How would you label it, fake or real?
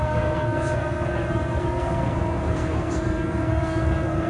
fake